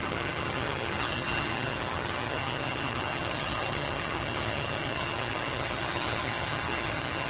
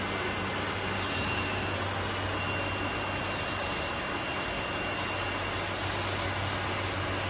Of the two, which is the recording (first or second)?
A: second